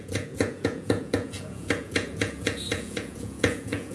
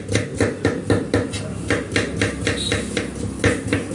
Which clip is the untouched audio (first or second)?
second